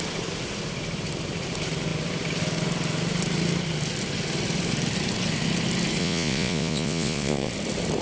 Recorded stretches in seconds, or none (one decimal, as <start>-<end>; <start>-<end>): 0.0-6.0; 7.5-8.0